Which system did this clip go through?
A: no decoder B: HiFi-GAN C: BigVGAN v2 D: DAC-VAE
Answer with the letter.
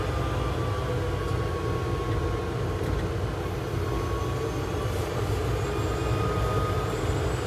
A